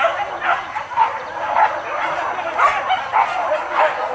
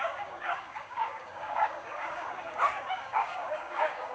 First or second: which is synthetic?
second